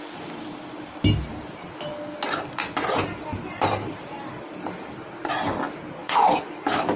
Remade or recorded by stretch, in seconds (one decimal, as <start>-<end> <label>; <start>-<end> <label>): 0.0-6.0 recorded; 6.0-7.0 remade